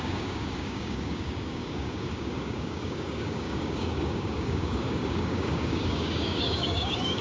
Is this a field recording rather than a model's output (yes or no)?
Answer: no